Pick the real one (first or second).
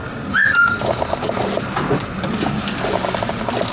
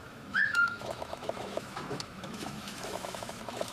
first